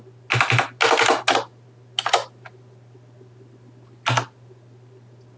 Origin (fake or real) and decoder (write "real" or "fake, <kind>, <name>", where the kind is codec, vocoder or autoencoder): real